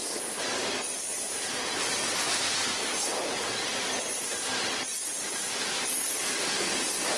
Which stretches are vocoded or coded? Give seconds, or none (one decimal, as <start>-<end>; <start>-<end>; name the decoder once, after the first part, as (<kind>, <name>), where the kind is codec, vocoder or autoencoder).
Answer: none